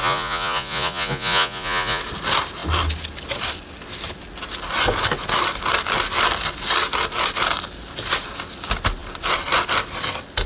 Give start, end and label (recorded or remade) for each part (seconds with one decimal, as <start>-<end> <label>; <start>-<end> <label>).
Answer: 0.0-2.0 remade; 2.0-10.5 recorded